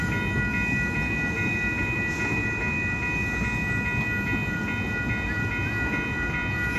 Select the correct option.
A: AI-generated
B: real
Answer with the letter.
B